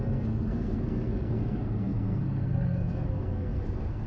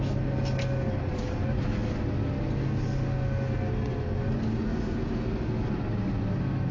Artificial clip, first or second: first